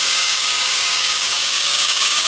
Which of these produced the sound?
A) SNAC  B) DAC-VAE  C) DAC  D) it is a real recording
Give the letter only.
C